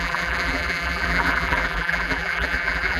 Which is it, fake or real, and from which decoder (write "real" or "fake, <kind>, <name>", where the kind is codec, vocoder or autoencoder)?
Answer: fake, vocoder, BigVGAN v2